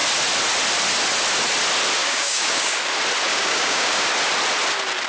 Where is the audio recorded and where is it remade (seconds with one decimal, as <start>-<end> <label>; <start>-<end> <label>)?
0.0-2.0 recorded; 2.0-2.8 remade; 2.8-3.3 recorded; 3.3-4.1 remade; 4.1-5.1 recorded